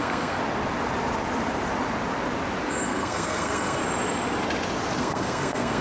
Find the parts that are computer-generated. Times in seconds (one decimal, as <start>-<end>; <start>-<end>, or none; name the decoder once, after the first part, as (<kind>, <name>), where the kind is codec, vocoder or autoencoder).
0.0-0.4 (codec, SNAC); 2.7-3.8; 5.0-5.8